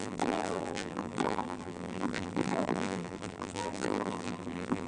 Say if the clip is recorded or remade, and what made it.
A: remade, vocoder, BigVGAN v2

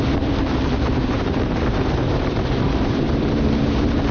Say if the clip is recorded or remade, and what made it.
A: remade, vocoder, BigVGAN v2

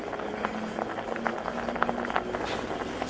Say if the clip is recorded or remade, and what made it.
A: recorded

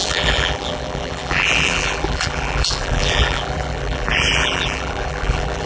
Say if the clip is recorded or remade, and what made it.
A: remade, vocoder, BigVGAN v2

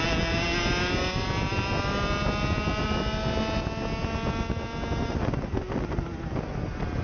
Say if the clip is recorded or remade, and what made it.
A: recorded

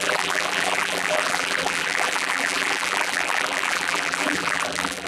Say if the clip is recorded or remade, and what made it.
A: remade, vocoder, BigVGAN v2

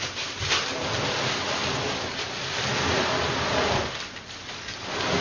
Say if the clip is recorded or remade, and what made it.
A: recorded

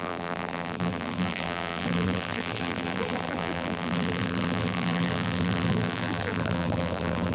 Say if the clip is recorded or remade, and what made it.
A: remade, vocoder, BigVGAN v2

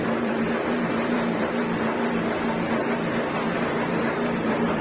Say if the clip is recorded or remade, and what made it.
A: remade, vocoder, BigVGAN v2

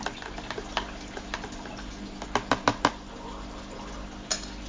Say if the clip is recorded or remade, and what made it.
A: recorded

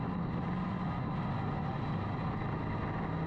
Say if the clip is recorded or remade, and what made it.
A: recorded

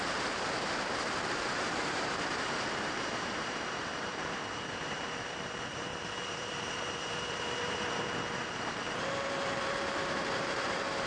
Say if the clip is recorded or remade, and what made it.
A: remade, vocoder, BigVGAN v2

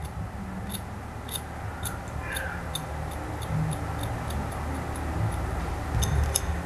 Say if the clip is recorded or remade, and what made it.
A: recorded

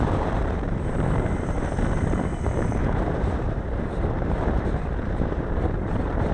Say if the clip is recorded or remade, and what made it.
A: remade, vocoder, BigVGAN v2